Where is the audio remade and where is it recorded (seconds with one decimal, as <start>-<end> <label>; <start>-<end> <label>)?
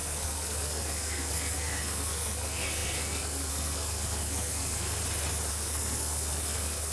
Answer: 0.0-5.0 remade; 5.0-5.5 recorded; 5.5-6.9 remade